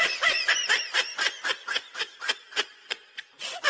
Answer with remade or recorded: remade